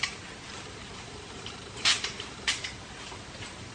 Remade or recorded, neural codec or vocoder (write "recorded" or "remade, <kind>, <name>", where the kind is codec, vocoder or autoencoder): remade, vocoder, BigVGAN v2